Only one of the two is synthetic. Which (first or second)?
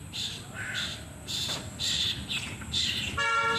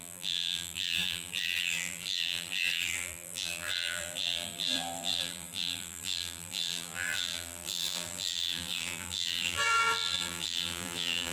second